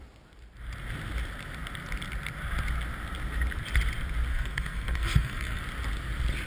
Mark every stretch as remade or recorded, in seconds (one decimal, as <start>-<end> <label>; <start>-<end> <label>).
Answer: 0.0-4.3 recorded; 4.3-5.6 remade; 5.6-6.5 recorded